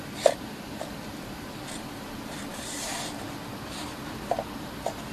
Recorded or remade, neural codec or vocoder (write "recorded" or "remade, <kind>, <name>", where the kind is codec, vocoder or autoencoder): recorded